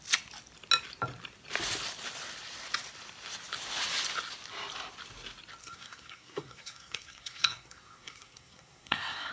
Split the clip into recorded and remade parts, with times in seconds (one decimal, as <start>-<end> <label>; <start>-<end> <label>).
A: 0.0-5.6 recorded; 5.6-9.3 remade

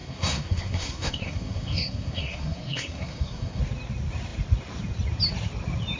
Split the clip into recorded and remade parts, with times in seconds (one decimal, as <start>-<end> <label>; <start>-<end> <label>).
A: 0.0-3.6 remade; 3.6-6.0 recorded

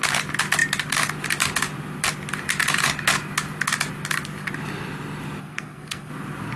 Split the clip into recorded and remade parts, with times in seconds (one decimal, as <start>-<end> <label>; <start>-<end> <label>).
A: 0.0-5.4 recorded; 5.4-6.1 remade; 6.1-6.6 recorded

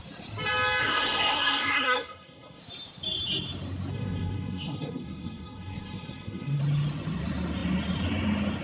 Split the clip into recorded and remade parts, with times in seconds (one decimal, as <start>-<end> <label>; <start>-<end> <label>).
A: 0.0-0.8 recorded; 0.8-2.6 remade; 2.6-3.9 recorded; 3.9-6.6 remade; 6.6-8.6 recorded

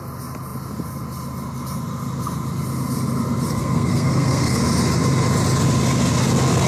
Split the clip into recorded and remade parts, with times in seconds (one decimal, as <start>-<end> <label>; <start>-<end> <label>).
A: 0.0-3.5 recorded; 3.5-4.6 remade; 4.6-6.7 recorded